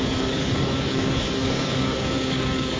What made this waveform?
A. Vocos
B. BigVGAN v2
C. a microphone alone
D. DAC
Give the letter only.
D